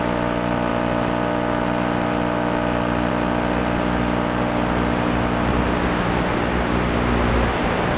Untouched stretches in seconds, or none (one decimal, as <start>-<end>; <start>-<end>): 0.0-8.0

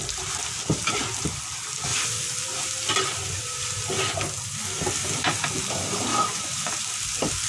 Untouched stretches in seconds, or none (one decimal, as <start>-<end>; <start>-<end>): 0.0-6.1; 6.7-7.5

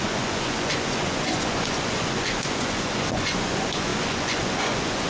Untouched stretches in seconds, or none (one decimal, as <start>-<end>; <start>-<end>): none